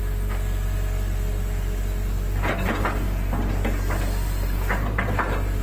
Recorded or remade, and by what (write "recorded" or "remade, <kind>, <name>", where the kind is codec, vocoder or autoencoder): recorded